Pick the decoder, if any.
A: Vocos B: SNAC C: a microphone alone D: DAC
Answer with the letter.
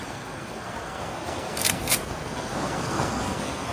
B